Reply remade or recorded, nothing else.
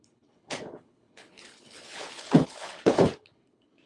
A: remade